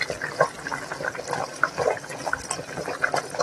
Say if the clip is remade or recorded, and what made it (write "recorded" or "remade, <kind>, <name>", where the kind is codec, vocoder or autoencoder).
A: recorded